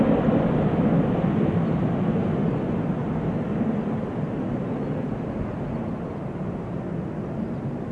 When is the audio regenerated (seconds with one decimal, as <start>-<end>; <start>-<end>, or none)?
none